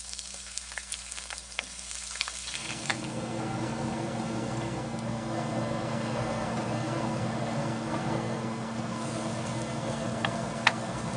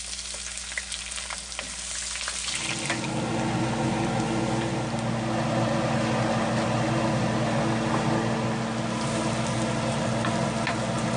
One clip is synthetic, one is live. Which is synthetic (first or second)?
first